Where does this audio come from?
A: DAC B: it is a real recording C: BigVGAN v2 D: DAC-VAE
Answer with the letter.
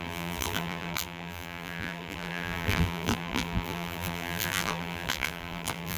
C